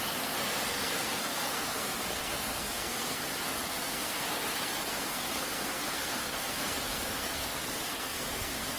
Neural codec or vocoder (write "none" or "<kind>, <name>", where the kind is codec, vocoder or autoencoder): codec, SNAC